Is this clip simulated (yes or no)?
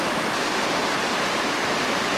yes